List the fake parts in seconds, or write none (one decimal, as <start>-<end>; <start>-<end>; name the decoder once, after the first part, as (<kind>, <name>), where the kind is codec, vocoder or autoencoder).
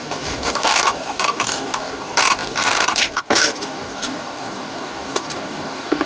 0.0-6.1 (codec, DAC)